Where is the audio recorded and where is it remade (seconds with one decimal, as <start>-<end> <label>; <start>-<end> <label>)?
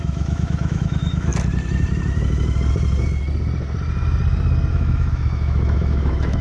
0.0-1.3 remade; 1.3-4.7 recorded; 4.7-6.4 remade